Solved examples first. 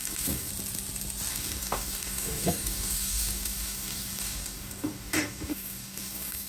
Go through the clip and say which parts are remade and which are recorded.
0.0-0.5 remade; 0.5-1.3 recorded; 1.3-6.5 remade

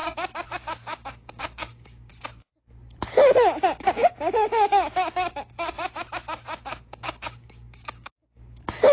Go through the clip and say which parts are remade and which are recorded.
0.0-2.1 remade; 2.1-6.5 recorded; 6.5-8.9 remade

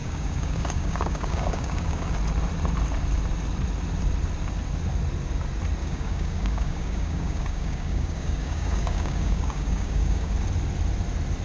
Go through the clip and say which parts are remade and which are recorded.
0.0-2.1 remade; 2.1-5.8 recorded; 5.8-10.3 remade; 10.3-11.4 recorded

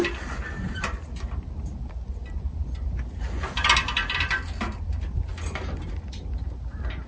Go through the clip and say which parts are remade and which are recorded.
0.0-7.1 recorded

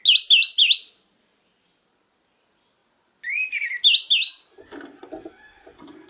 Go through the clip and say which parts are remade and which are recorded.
0.0-6.1 recorded

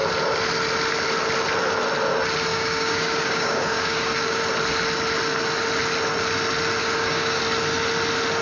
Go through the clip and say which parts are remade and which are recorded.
0.0-2.5 recorded; 2.5-4.4 remade; 4.4-6.8 recorded; 6.8-7.4 remade; 7.4-8.4 recorded